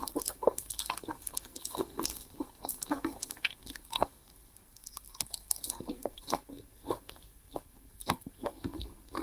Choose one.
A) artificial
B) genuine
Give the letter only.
A